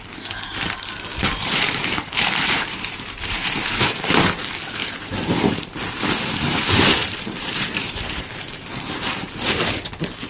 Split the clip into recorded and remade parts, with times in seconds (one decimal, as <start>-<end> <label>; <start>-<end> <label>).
0.0-1.1 recorded; 1.1-3.8 remade; 3.8-4.8 recorded; 4.8-9.7 remade; 9.7-10.3 recorded